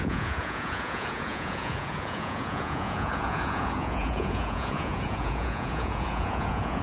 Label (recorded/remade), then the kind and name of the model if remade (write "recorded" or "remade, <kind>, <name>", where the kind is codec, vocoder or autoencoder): remade, vocoder, Vocos